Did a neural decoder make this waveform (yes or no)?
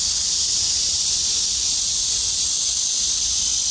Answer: no